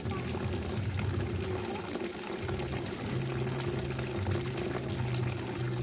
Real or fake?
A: real